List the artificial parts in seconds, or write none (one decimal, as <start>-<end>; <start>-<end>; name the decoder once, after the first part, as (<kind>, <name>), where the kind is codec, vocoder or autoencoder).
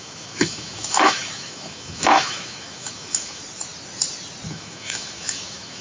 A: 0.0-3.4 (autoencoder, DAC-VAE); 4.5-5.8